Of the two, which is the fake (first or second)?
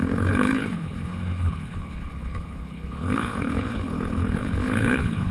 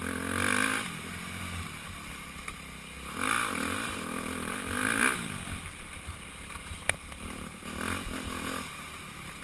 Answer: first